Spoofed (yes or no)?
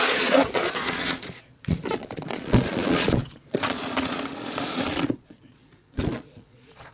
yes